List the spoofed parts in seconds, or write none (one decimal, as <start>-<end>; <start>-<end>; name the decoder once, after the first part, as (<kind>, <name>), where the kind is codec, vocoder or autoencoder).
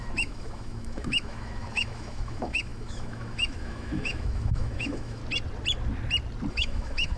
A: 0.0-5.2 (autoencoder, DAC-VAE); 6.5-7.2